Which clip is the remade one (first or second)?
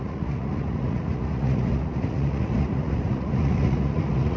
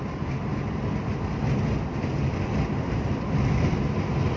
first